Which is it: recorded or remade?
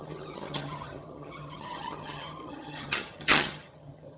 remade